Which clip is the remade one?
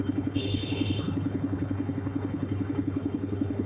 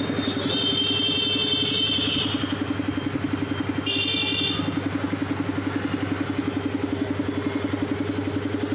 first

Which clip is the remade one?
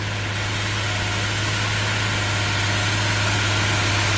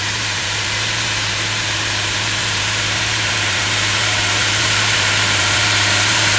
second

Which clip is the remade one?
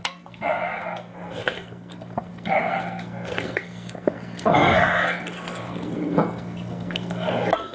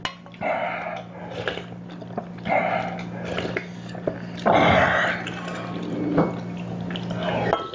first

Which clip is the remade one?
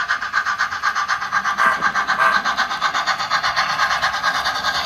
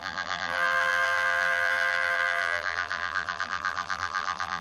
second